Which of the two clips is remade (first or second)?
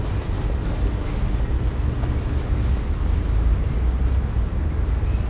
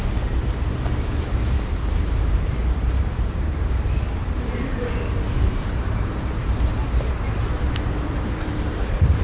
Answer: second